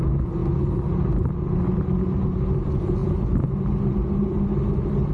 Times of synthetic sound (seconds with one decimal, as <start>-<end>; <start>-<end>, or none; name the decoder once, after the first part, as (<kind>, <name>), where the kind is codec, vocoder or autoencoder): none